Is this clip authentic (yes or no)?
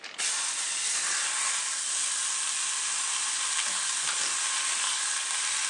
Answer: yes